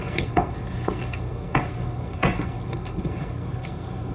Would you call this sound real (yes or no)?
no